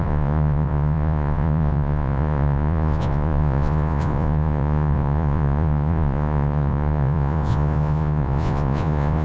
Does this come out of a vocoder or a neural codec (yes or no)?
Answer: yes